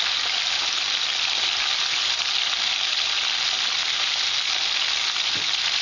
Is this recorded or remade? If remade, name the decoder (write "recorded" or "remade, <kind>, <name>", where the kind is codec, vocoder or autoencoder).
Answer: recorded